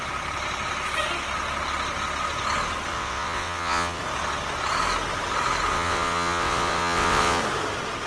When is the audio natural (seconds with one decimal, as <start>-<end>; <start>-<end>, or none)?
0.0-2.9; 4.0-5.7; 7.4-8.1